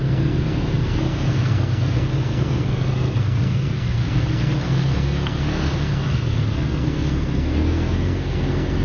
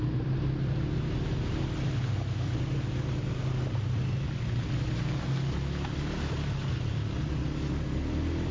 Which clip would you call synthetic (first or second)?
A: first